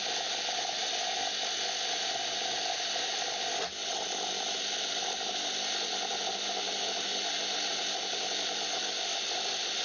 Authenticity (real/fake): real